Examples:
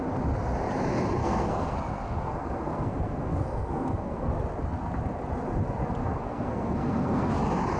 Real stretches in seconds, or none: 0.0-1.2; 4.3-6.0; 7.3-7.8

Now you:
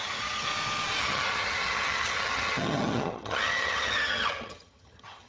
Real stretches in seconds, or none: 0.5-1.0

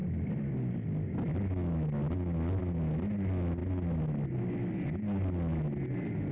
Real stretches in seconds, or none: 0.0-6.3